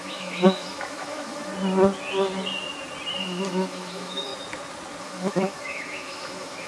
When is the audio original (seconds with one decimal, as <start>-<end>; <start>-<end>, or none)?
1.5-3.2; 4.3-5.0

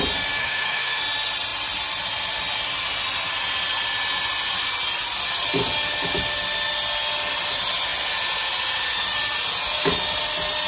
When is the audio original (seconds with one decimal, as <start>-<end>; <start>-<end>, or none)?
0.0-0.4; 1.0-10.7

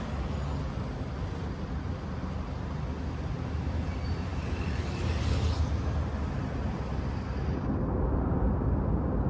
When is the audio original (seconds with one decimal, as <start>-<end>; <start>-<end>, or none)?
0.0-9.3

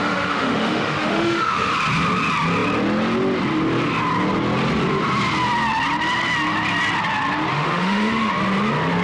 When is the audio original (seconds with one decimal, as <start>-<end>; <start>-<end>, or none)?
1.7-7.5; 8.3-9.0